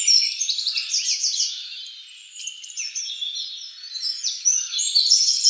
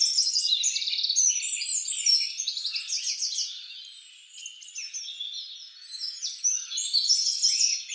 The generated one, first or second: first